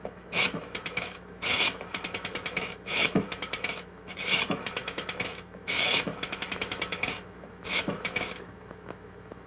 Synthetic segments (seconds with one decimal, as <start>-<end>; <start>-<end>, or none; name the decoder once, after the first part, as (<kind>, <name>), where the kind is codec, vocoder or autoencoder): 0.0-9.5 (autoencoder, DAC-VAE)